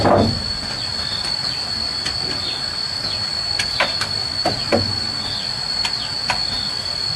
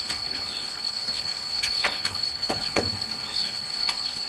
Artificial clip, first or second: second